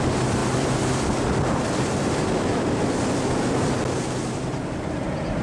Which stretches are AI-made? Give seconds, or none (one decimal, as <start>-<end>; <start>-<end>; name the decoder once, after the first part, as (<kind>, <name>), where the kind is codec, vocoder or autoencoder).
0.0-5.4 (vocoder, BigVGAN v2)